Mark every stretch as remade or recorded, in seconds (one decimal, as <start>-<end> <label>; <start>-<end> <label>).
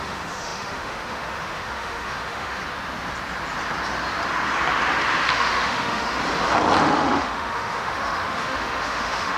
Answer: 0.0-2.6 remade; 2.6-5.3 recorded; 5.3-6.2 remade; 6.2-6.8 recorded; 6.8-9.4 remade